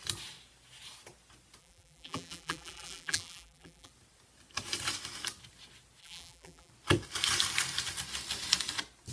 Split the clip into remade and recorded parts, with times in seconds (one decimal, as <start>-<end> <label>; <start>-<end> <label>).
0.0-1.6 recorded; 1.6-3.9 remade; 3.9-6.0 recorded; 6.0-6.7 remade; 6.7-9.1 recorded